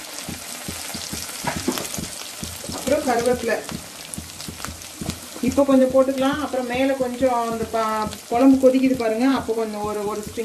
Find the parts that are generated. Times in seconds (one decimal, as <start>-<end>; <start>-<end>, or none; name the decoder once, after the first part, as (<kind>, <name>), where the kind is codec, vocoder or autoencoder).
0.9-4.7 (vocoder, BigVGAN v2); 9.3-10.4